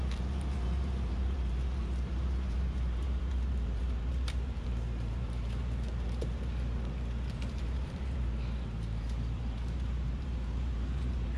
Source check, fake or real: fake